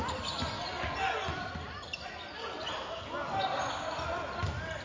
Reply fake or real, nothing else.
real